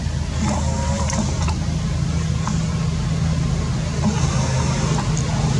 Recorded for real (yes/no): yes